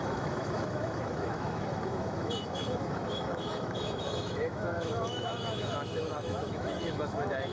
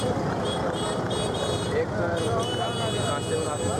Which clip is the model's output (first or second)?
first